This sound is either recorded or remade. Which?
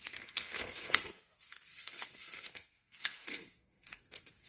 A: remade